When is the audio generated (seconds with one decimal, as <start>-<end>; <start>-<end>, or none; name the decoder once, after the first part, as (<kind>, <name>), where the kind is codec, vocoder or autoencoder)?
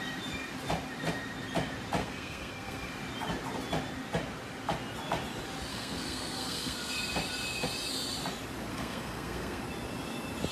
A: 2.0-2.9 (codec, SNAC); 5.7-7.0; 8.7-9.6